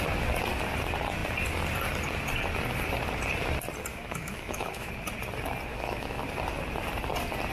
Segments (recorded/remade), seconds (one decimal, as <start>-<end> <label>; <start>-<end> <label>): 0.0-3.9 recorded; 3.9-4.9 remade; 4.9-5.7 recorded; 5.7-6.2 remade; 6.2-7.5 recorded